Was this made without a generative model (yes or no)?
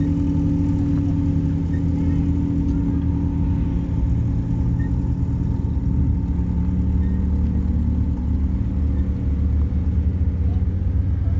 yes